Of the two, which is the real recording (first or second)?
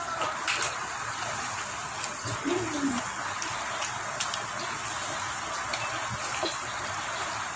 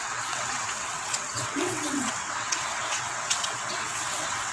first